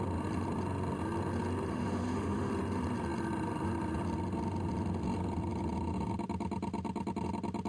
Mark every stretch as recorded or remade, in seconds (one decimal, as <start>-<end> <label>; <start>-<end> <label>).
0.0-1.7 recorded; 1.7-2.5 remade; 2.5-7.7 recorded